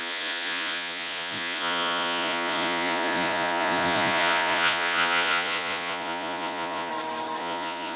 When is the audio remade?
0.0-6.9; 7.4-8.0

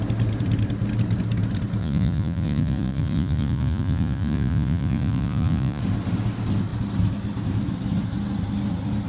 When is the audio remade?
1.8-5.8

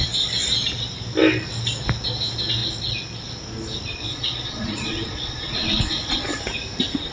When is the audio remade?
4.1-6.4

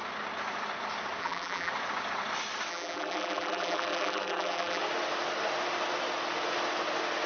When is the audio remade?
1.2-1.7; 2.7-4.8

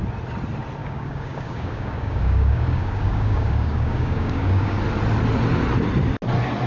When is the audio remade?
0.8-4.8